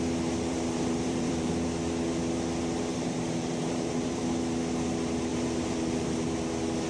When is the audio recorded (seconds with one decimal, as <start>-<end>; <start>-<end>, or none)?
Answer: 0.0-0.5; 1.5-2.9; 4.2-5.3; 6.3-6.9